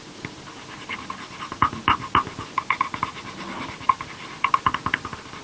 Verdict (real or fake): real